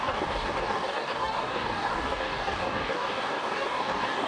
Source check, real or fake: fake